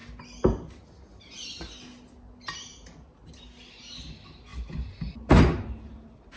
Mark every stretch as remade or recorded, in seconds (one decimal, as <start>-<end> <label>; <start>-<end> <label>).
0.0-6.4 recorded